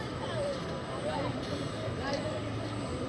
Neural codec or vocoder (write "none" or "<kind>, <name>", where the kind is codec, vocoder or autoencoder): none